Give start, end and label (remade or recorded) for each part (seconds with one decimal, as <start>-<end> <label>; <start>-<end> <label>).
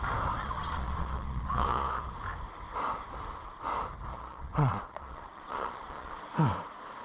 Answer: 0.0-0.4 recorded; 0.4-2.0 remade; 2.0-4.1 recorded; 4.1-6.1 remade; 6.1-7.0 recorded